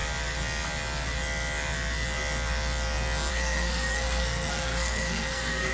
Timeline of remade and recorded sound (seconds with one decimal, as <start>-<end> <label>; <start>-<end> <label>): 0.0-3.3 recorded; 3.3-5.7 remade